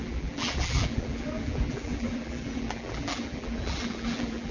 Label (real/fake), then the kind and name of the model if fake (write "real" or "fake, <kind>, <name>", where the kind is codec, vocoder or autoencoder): fake, vocoder, BigVGAN v2